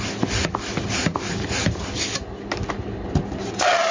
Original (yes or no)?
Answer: yes